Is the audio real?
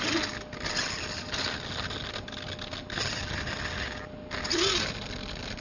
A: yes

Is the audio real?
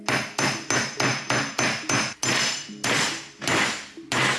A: yes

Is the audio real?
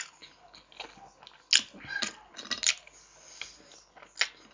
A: yes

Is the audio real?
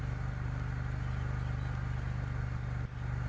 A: yes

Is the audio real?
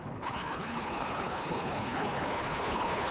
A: no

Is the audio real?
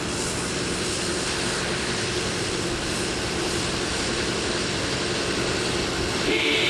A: yes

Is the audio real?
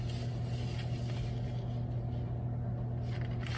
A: yes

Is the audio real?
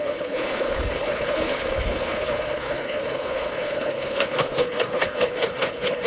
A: no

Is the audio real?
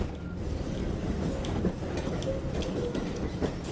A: yes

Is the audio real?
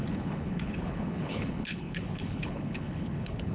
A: no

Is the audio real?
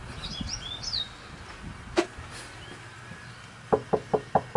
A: yes